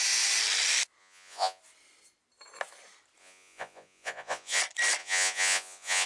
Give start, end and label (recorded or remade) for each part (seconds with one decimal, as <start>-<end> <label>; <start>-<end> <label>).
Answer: 0.0-1.0 recorded; 1.0-1.6 remade; 1.6-3.2 recorded; 3.2-4.6 remade; 4.6-5.0 recorded; 5.0-6.1 remade